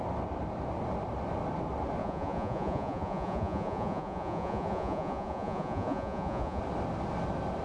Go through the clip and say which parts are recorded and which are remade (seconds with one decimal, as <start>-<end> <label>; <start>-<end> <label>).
0.0-2.0 recorded; 2.0-6.6 remade; 6.6-7.6 recorded